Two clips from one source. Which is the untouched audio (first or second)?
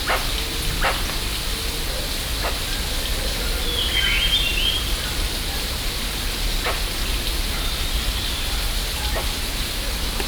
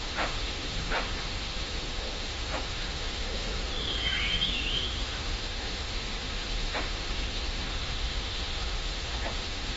first